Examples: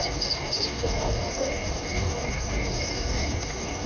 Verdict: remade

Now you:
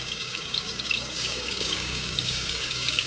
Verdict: remade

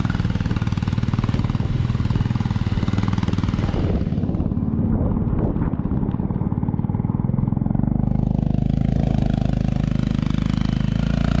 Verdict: recorded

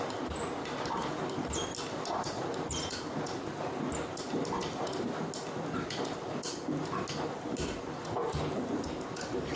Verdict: recorded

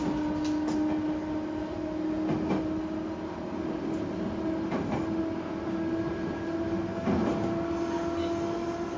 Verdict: recorded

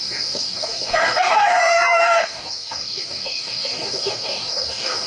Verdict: remade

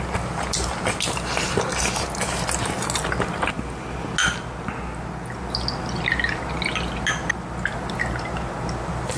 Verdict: recorded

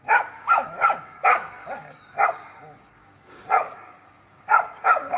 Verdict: remade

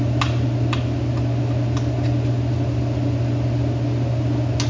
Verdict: recorded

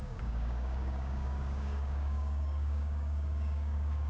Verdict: remade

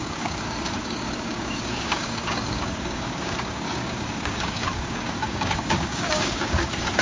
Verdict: remade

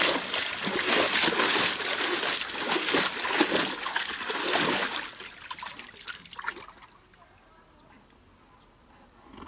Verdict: recorded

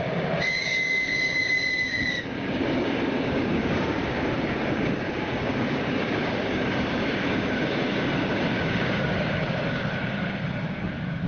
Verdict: remade